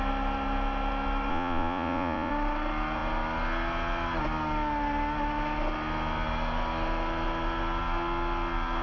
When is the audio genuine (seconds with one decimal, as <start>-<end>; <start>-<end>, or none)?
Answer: 0.0-1.3; 2.3-8.8